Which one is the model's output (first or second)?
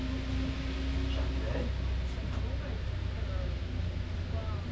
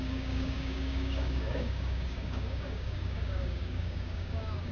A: second